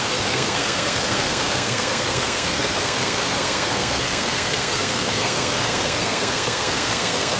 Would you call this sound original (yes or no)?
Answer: no